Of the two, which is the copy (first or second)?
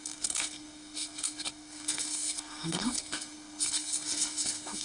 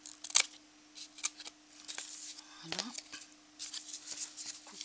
first